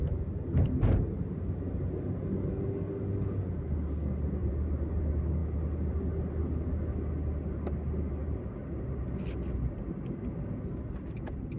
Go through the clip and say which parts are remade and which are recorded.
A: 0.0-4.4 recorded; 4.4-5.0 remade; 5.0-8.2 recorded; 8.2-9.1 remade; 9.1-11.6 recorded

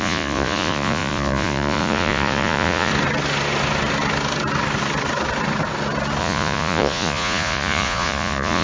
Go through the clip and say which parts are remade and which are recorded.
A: 0.0-2.9 remade; 2.9-6.2 recorded; 6.2-8.6 remade

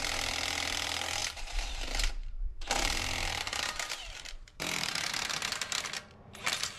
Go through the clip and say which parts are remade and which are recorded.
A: 0.0-1.2 recorded; 1.2-5.3 remade; 5.3-6.8 recorded